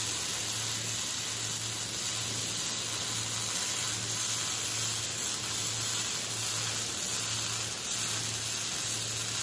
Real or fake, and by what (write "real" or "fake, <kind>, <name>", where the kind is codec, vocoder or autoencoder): real